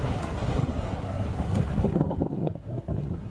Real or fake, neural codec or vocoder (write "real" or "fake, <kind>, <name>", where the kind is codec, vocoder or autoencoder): fake, codec, SNAC